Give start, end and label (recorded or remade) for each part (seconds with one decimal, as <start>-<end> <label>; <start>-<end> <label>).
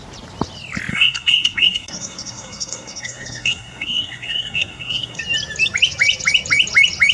0.0-0.9 recorded; 0.9-5.2 remade; 5.2-7.1 recorded